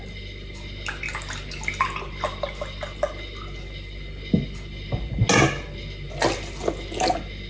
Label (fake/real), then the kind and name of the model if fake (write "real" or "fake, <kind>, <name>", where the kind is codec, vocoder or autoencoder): real